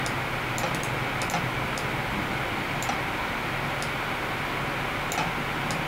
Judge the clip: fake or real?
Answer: real